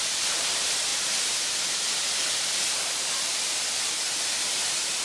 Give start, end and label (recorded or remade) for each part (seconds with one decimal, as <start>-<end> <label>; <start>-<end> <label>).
0.0-5.0 remade